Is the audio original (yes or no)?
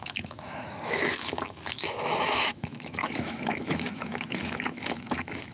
no